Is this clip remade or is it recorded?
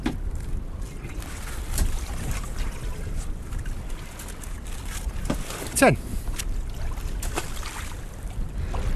recorded